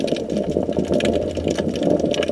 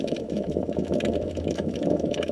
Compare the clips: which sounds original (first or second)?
first